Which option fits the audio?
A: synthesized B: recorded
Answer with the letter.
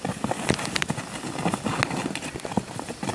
B